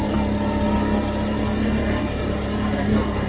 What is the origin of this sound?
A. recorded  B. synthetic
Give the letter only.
A